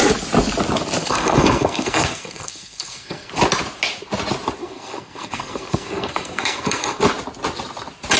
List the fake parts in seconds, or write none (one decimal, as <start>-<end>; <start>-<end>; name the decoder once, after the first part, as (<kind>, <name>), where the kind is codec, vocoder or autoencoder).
1.0-3.3 (codec, SNAC); 4.6-7.0